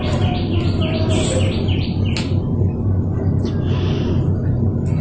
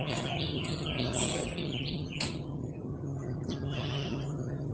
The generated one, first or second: second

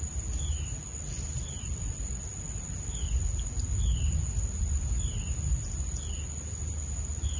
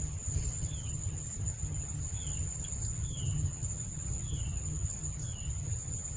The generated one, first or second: second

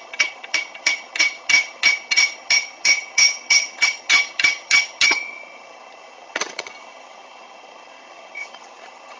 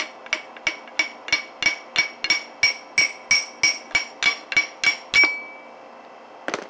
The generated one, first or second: first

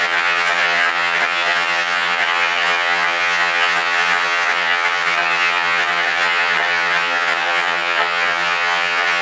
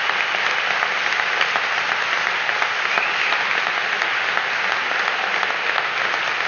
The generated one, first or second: first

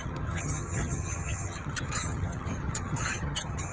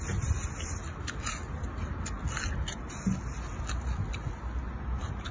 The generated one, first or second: first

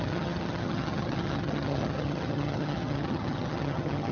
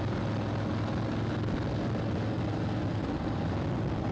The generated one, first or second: first